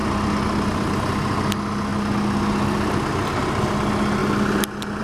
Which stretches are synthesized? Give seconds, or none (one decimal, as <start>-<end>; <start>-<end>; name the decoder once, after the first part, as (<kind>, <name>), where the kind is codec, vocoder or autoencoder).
none